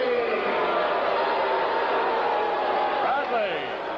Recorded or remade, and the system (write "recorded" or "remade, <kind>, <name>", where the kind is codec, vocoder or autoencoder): recorded